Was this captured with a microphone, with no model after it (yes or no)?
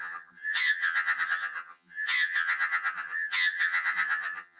no